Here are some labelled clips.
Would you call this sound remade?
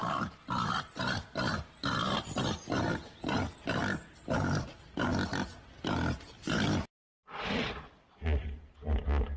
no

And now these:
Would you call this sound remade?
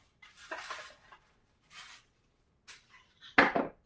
no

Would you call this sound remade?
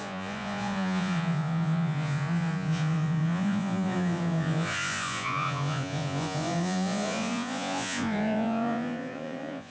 yes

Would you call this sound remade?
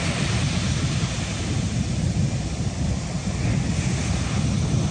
no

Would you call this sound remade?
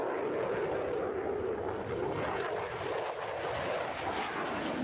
no